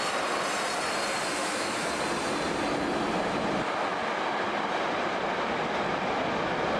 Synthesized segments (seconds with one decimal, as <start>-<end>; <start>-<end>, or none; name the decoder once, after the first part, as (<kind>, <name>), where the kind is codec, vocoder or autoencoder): 1.4-1.9 (autoencoder, DAC-VAE)